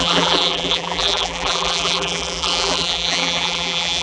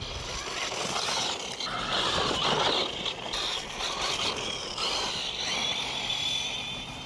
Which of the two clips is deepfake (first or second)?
first